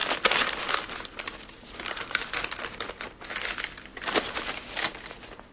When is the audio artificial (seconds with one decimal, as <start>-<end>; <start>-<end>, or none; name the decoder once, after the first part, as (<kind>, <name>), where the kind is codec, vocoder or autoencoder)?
0.0-2.4 (vocoder, BigVGAN v2); 3.9-4.5